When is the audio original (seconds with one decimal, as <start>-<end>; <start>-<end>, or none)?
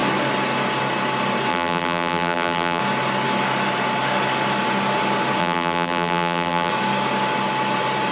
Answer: 0.0-1.5; 2.8-5.4; 6.7-8.1